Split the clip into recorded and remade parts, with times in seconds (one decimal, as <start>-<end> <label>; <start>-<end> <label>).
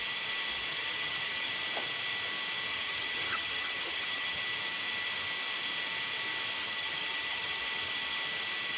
0.0-0.7 recorded; 0.7-1.5 remade; 1.5-2.7 recorded; 2.7-4.4 remade; 4.4-6.6 recorded; 6.6-7.6 remade; 7.6-8.8 recorded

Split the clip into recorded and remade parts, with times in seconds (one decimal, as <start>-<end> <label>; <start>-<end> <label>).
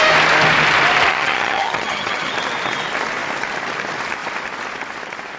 0.0-1.1 recorded; 1.1-2.3 remade; 2.3-5.4 recorded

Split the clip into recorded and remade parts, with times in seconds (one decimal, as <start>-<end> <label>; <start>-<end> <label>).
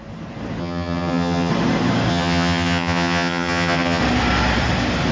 0.0-0.6 recorded; 0.6-1.5 remade; 1.5-2.1 recorded; 2.1-4.0 remade; 4.0-5.1 recorded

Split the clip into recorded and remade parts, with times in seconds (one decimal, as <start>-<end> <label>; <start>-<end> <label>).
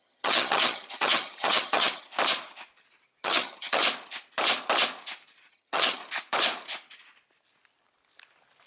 0.0-2.1 remade; 2.1-3.2 recorded; 3.2-3.8 remade; 3.8-5.5 recorded; 5.5-6.0 remade; 6.0-8.7 recorded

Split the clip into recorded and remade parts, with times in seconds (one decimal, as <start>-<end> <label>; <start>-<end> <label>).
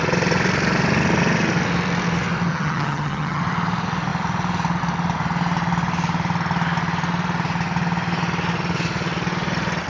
0.0-2.5 recorded; 2.5-3.4 remade; 3.4-9.9 recorded